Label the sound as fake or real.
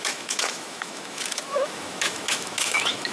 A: fake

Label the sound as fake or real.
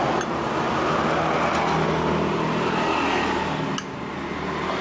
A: real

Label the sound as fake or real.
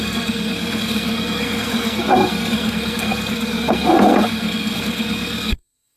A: fake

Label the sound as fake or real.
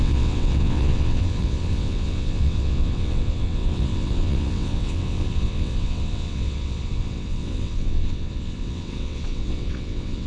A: fake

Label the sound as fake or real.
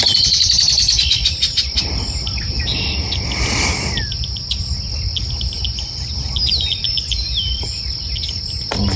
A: real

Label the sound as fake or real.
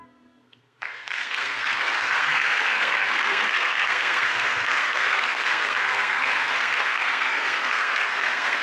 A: fake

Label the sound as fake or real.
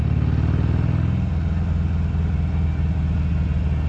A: real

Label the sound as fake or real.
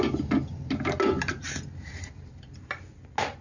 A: real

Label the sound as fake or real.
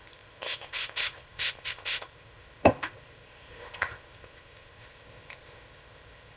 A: fake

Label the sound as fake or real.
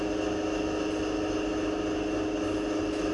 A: real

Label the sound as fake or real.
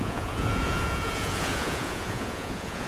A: fake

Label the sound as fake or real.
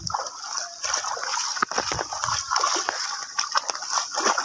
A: real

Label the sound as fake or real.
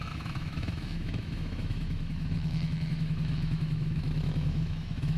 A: fake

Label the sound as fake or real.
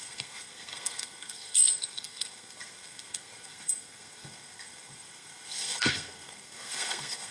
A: fake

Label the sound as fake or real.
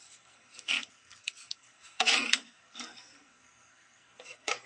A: fake